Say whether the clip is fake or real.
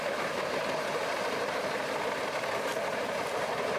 real